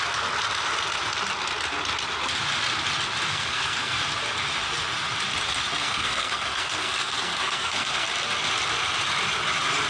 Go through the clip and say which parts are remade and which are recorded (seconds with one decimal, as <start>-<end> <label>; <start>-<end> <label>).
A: 0.0-3.3 recorded; 3.3-4.0 remade; 4.0-5.8 recorded; 5.8-8.1 remade; 8.1-9.9 recorded